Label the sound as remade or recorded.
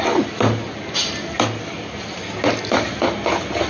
recorded